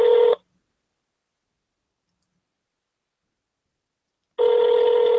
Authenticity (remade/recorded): recorded